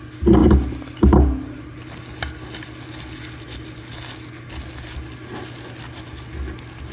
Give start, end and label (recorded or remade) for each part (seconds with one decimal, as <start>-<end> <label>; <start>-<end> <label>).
0.0-6.9 recorded